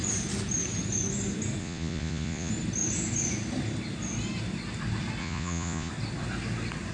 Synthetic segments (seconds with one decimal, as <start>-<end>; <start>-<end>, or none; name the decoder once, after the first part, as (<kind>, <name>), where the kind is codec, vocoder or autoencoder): 1.6-2.5 (vocoder, Vocos); 5.2-5.9